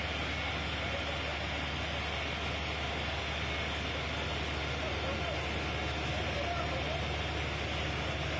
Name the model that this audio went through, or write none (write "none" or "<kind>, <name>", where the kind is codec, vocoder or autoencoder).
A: none